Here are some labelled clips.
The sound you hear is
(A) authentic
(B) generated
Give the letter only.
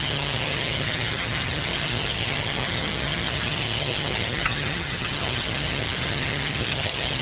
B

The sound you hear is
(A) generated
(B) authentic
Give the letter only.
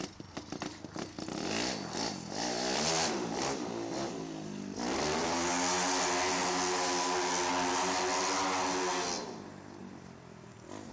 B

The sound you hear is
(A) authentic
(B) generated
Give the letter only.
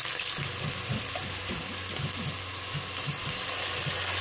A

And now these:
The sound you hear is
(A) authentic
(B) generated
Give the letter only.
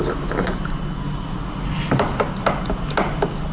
A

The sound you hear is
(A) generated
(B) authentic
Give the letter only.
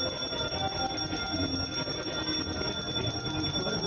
B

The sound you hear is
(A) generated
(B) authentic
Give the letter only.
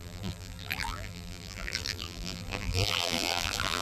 A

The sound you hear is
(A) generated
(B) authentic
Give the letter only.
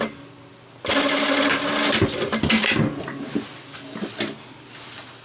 B